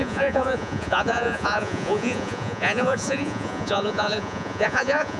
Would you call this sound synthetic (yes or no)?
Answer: yes